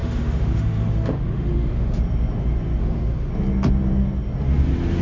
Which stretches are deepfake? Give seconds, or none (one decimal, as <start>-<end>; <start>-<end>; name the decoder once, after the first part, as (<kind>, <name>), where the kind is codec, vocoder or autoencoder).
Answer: 0.0-2.0 (autoencoder, DAC-VAE); 2.8-3.3